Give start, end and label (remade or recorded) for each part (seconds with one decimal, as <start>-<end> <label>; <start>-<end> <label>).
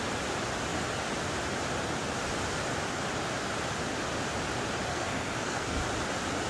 0.0-4.9 recorded; 4.9-5.8 remade; 5.8-6.5 recorded